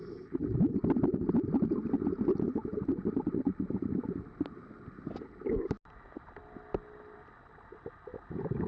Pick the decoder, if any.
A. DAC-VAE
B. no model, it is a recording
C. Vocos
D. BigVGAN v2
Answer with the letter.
B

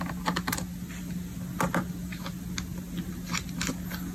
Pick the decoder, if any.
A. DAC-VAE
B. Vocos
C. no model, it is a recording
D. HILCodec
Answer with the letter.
C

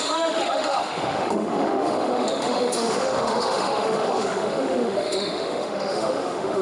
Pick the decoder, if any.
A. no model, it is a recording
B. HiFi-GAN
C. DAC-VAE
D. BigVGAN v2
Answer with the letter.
C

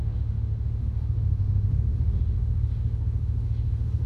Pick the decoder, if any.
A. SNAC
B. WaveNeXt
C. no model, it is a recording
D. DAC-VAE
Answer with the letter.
D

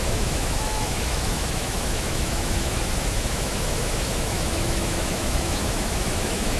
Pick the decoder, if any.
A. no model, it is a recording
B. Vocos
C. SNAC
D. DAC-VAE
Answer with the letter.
D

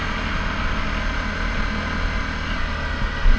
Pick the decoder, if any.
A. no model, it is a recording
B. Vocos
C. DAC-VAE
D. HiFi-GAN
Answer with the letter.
A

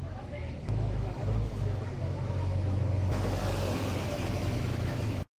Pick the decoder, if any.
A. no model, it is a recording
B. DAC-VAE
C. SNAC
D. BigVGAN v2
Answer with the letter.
B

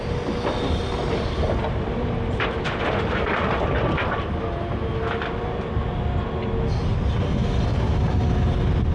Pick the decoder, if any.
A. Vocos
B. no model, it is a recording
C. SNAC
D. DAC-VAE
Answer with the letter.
B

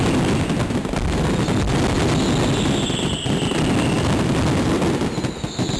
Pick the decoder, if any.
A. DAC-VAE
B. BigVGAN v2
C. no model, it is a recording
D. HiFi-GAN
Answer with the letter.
C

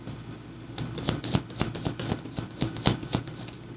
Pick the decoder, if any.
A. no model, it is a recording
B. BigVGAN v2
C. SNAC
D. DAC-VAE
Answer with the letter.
A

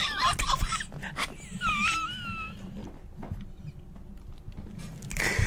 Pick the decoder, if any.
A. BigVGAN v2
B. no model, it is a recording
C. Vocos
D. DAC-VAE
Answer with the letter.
B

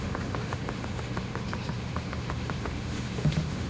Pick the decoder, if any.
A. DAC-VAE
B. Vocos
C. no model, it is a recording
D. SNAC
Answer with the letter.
A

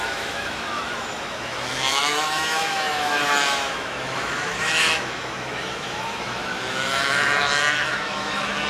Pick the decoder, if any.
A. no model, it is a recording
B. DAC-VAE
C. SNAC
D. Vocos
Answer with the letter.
B